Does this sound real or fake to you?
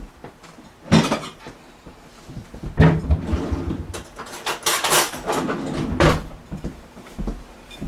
real